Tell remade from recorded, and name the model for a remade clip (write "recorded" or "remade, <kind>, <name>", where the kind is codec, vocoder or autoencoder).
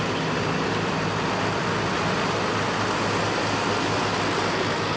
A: recorded